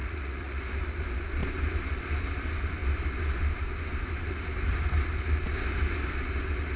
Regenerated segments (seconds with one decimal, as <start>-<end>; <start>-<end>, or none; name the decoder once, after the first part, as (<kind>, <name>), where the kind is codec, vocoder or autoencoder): 0.0-0.6 (vocoder, Vocos)